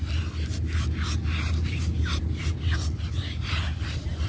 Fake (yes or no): no